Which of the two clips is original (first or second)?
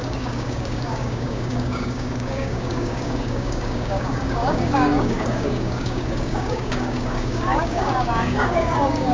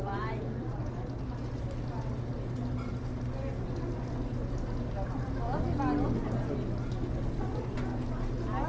second